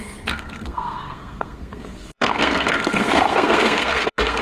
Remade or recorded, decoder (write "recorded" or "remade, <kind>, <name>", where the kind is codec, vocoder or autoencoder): remade, codec, SNAC